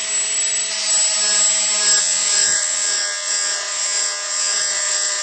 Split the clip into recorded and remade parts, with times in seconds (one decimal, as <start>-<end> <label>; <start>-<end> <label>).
0.0-2.0 recorded; 2.0-5.2 remade